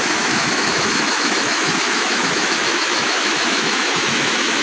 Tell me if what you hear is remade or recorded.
remade